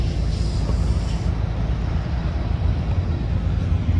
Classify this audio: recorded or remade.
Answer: recorded